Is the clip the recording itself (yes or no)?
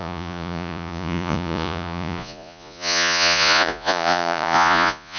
no